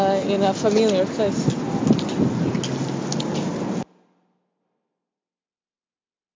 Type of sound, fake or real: real